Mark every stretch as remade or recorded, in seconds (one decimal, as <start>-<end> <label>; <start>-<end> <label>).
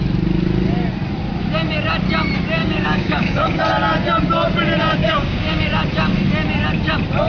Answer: 0.0-2.6 recorded; 2.6-3.6 remade; 3.6-5.0 recorded; 5.0-5.6 remade; 5.6-7.3 recorded